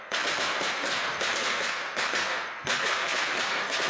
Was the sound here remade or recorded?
remade